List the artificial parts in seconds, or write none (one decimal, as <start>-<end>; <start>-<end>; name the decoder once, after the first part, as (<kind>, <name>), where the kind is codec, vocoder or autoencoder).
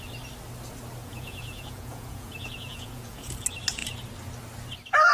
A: 1.0-3.3 (vocoder, Vocos)